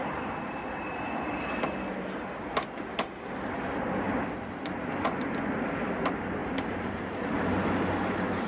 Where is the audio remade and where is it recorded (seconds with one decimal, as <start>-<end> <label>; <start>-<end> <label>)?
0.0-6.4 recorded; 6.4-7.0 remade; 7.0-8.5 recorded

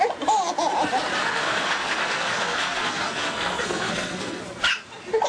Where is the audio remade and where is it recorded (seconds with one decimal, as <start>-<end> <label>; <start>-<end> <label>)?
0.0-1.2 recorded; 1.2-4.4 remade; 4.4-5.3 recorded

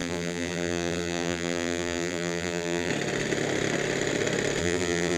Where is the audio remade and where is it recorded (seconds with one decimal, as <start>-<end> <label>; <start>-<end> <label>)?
0.0-2.9 remade; 2.9-4.6 recorded; 4.6-5.2 remade

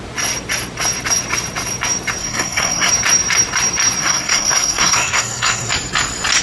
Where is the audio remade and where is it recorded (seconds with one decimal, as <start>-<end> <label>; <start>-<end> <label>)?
0.0-2.2 recorded; 2.2-2.9 remade; 2.9-4.0 recorded; 4.0-5.7 remade; 5.7-6.4 recorded

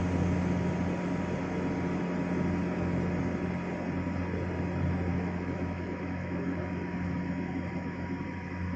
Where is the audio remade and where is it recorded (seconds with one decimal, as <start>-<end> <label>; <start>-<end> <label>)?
0.0-5.1 recorded; 5.1-8.8 remade